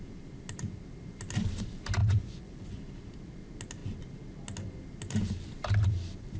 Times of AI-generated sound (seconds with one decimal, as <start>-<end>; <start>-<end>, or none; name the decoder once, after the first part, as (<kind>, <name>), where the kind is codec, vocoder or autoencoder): 2.0-2.8 (vocoder, Vocos)